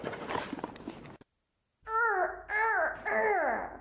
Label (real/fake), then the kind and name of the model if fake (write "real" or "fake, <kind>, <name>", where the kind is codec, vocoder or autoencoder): real